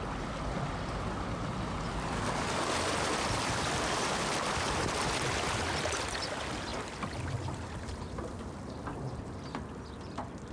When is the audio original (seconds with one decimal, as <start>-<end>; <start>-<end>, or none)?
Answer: 0.0-10.5